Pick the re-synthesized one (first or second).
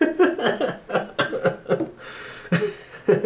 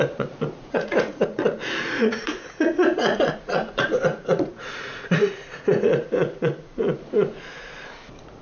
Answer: second